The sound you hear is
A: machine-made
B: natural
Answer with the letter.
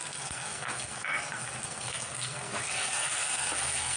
A